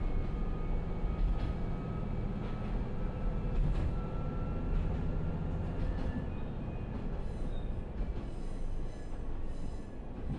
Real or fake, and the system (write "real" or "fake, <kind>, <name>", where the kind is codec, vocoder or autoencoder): real